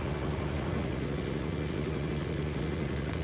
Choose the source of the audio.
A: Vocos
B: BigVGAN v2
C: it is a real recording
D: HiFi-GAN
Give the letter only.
A